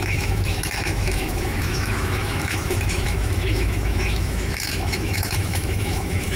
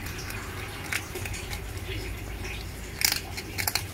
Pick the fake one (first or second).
first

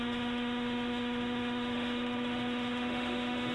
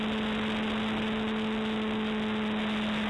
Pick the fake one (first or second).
first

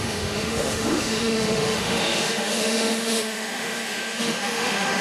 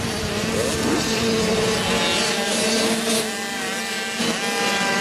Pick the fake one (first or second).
first